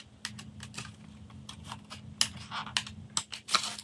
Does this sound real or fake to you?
real